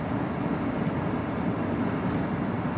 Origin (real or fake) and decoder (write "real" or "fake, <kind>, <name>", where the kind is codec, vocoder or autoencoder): real